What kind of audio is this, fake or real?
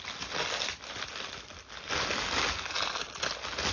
real